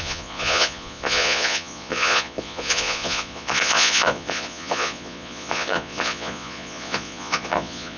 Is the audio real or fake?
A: fake